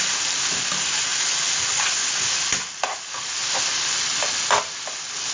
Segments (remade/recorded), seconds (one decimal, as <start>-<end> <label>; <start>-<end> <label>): 0.0-5.3 recorded